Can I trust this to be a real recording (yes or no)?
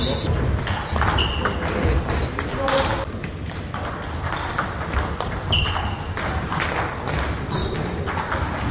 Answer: yes